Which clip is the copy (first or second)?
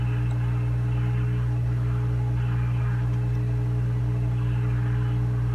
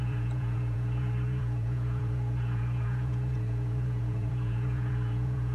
second